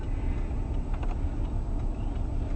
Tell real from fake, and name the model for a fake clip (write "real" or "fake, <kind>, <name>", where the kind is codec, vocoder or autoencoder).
real